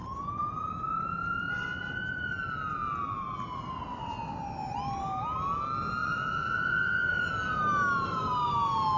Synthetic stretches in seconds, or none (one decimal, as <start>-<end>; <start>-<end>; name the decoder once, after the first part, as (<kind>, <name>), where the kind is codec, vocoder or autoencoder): 6.0-7.3 (vocoder, Vocos)